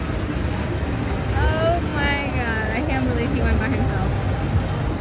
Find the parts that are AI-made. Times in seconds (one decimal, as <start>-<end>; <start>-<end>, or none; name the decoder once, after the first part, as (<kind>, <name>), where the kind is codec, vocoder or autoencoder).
none